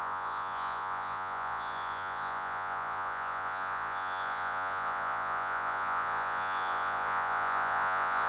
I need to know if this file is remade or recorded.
remade